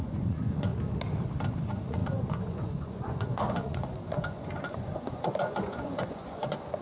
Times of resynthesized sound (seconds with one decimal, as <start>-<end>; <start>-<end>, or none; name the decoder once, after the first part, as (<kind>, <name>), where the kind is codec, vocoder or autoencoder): 0.0-0.7 (vocoder, Vocos); 1.5-6.8